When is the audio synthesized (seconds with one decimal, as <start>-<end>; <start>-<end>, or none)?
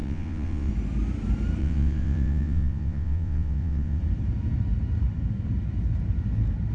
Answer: 0.0-0.7; 1.6-4.0